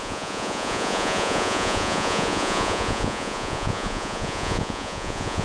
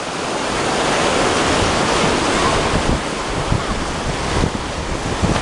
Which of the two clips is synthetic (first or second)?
first